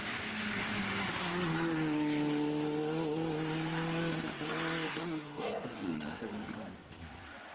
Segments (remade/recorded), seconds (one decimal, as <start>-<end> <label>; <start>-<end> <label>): 0.0-5.0 recorded; 5.0-6.3 remade; 6.3-7.5 recorded